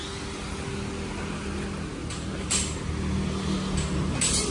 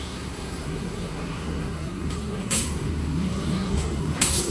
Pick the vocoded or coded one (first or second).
second